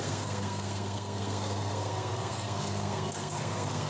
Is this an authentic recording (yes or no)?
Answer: no